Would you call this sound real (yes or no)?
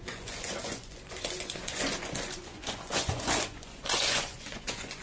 no